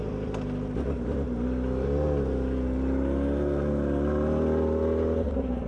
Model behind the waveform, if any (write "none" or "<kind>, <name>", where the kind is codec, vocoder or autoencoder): none